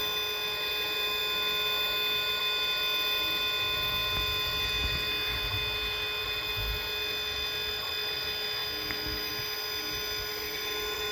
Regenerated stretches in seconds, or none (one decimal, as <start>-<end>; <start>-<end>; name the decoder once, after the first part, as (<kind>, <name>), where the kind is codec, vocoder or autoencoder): none